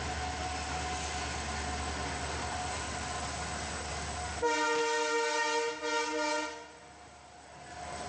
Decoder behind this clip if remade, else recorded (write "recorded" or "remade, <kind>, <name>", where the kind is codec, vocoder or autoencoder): recorded